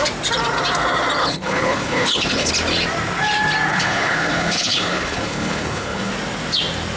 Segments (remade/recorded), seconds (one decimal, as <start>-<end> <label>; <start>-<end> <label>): 0.0-1.2 recorded; 1.2-2.5 remade; 2.5-3.7 recorded; 3.7-6.1 remade; 6.1-7.0 recorded